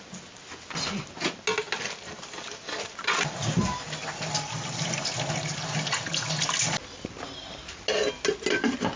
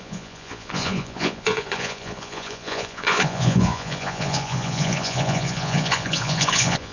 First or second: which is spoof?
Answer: second